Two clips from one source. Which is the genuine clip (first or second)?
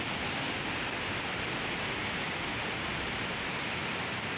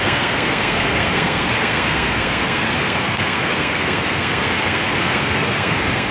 first